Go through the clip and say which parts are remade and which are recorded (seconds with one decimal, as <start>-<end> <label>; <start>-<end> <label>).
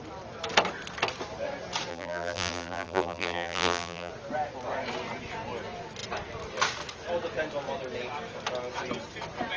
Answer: 0.0-1.9 recorded; 1.9-4.1 remade; 4.1-9.6 recorded